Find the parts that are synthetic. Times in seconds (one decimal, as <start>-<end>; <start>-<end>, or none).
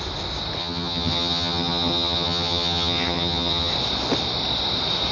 0.6-3.7